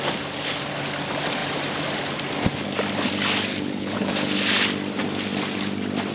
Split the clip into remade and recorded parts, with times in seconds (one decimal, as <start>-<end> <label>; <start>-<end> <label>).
0.0-3.5 recorded; 3.5-4.1 remade; 4.1-6.1 recorded